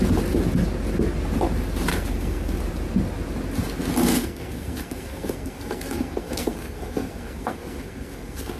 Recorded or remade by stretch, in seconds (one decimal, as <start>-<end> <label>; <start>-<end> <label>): 0.0-1.9 recorded; 1.9-2.6 remade; 2.6-4.1 recorded; 4.1-8.6 remade